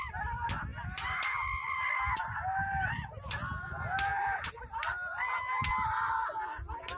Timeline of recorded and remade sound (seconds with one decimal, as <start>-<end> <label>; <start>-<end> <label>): 0.0-7.0 recorded